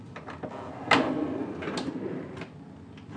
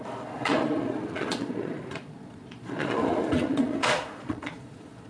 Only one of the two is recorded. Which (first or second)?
first